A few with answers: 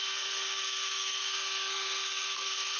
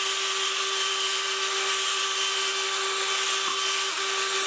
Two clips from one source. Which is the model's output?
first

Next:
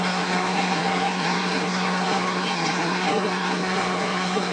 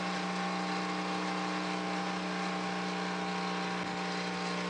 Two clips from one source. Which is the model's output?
first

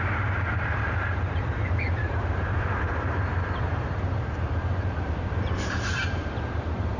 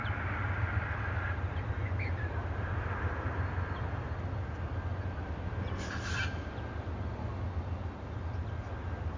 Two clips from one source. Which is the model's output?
first